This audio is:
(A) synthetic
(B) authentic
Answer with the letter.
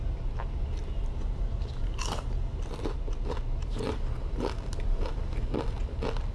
B